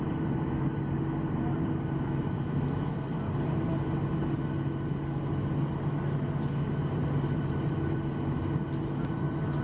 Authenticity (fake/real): real